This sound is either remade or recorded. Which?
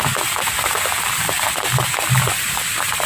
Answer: recorded